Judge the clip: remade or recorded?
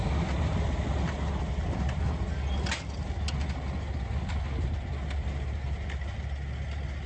recorded